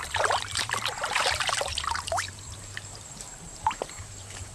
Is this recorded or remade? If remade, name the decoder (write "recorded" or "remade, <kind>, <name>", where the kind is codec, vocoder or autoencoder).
remade, vocoder, BigVGAN v2